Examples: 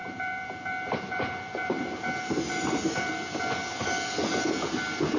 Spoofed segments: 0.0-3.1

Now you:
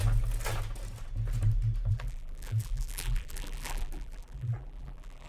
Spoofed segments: 1.9-5.3